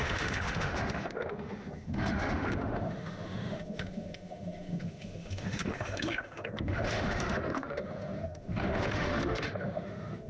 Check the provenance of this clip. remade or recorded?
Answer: remade